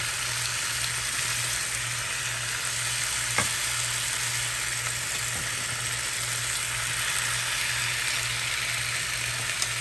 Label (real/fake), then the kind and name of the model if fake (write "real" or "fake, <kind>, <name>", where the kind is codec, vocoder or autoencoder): real